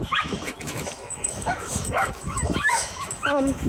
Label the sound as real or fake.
fake